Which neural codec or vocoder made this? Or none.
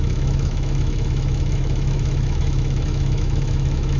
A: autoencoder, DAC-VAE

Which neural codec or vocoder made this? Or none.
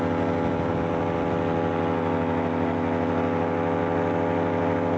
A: none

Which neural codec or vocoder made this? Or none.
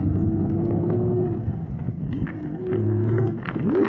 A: codec, SNAC